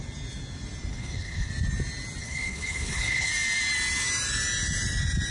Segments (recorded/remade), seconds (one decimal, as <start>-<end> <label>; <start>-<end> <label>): 0.0-0.9 recorded; 0.9-1.5 remade; 1.5-2.2 recorded; 2.2-3.3 remade; 3.3-5.3 recorded